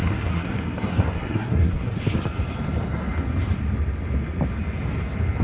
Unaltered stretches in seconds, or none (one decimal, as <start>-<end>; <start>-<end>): 2.0-5.4